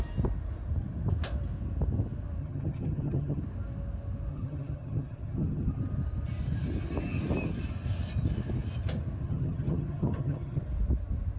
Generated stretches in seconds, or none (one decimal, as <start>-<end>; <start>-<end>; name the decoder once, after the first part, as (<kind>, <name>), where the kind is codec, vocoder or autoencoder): 2.4-3.4 (vocoder, HiFi-GAN); 4.3-5.8; 9.2-10.6